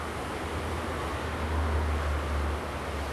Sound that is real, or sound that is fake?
real